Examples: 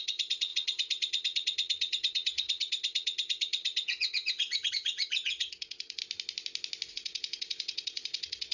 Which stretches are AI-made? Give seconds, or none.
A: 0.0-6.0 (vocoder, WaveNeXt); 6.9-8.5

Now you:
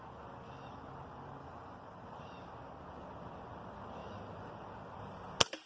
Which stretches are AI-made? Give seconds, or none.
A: 1.4-2.2 (vocoder, BigVGAN v2)

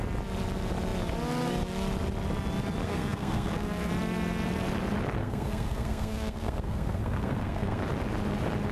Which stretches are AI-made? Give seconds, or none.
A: 2.8-3.9 (codec, SNAC); 5.2-7.8

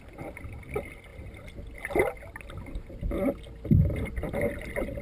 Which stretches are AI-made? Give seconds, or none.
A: none

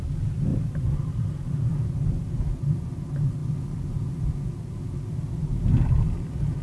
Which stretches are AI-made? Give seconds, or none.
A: 0.5-2.2 (vocoder, BigVGAN v2)

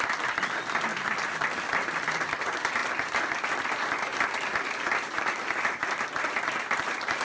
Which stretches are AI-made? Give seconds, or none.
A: none

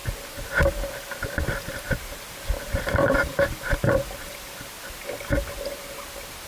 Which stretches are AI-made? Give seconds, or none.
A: 1.7-3.2 (vocoder, BigVGAN v2)

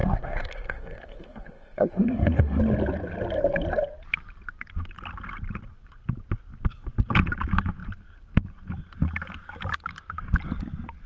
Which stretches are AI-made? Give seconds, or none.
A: 0.0-2.6 (codec, SNAC)